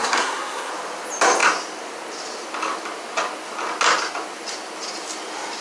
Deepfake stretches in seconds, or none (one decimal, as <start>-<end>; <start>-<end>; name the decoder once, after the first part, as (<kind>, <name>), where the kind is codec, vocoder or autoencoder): 0.0-0.7 (codec, SNAC)